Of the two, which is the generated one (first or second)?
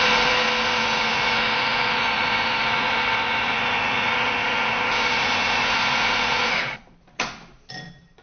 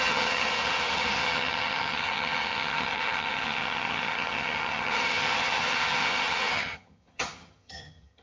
second